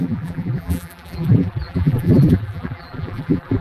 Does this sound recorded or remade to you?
remade